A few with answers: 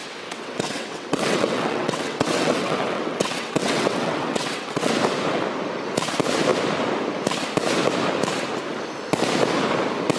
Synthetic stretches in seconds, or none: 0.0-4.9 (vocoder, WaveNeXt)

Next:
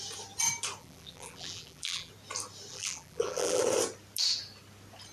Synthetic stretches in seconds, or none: 0.8-2.1 (vocoder, BigVGAN v2); 2.7-3.6